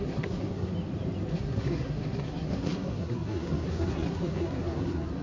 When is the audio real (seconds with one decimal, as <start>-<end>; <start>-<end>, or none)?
0.7-1.3